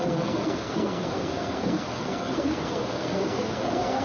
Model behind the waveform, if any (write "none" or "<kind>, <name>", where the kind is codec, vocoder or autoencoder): codec, SNAC